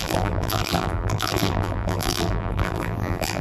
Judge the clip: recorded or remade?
remade